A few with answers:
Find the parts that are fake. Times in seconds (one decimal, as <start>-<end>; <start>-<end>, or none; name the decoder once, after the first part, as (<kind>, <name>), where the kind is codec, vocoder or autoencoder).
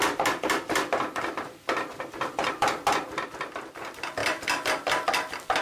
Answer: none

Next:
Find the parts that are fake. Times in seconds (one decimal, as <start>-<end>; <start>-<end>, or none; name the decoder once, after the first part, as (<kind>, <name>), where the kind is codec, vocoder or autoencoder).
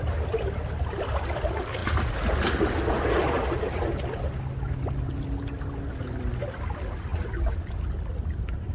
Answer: 0.0-1.8 (vocoder, BigVGAN v2); 5.9-7.1; 8.1-8.7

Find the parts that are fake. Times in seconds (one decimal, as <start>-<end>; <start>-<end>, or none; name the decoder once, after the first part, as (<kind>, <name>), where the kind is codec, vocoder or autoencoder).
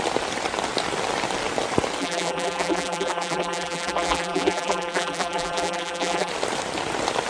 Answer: 2.0-6.3 (vocoder, BigVGAN v2)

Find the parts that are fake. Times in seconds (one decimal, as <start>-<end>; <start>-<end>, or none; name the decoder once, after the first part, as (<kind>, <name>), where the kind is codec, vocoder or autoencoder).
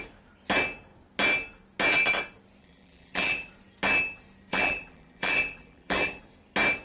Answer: 2.6-3.5 (vocoder, BigVGAN v2); 4.5-6.2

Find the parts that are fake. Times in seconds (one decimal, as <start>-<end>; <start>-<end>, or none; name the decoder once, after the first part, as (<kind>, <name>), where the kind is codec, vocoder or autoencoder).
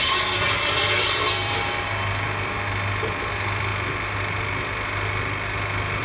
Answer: 0.0-3.7 (vocoder, BigVGAN v2)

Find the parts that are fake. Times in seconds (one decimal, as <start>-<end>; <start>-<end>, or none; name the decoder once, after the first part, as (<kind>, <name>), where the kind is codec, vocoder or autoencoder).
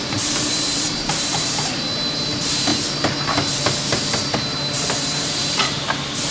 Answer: 0.0-2.7 (vocoder, BigVGAN v2); 4.1-5.6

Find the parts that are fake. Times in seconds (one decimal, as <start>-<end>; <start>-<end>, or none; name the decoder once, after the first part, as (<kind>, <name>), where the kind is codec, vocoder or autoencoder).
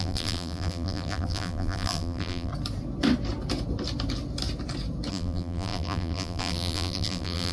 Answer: 0.0-2.5 (vocoder, BigVGAN v2); 5.1-7.5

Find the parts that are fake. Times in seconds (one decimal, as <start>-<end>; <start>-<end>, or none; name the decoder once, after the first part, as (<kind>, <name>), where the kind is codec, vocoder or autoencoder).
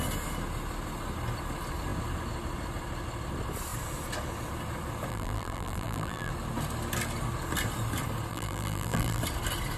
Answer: 5.1-6.3 (vocoder, BigVGAN v2); 8.3-9.2